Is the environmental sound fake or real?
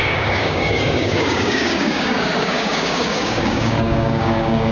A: fake